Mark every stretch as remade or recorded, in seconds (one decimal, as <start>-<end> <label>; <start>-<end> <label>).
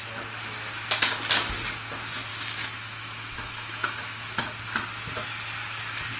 0.0-2.3 recorded; 2.3-4.4 remade; 4.4-6.2 recorded